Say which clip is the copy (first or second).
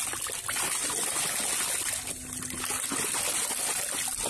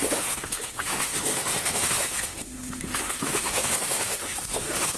second